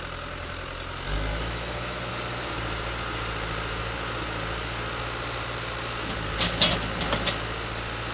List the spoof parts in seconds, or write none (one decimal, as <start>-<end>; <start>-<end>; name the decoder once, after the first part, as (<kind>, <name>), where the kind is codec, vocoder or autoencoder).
1.3-2.1 (autoencoder, DAC-VAE)